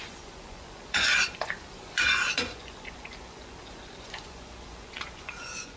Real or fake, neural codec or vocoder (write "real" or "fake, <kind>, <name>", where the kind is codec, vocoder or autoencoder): fake, vocoder, Vocos